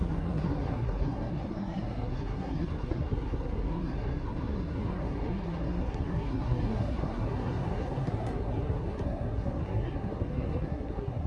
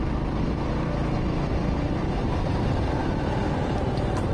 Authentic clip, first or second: second